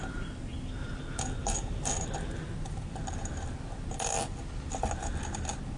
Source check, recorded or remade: recorded